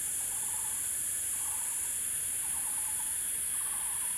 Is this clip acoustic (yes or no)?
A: no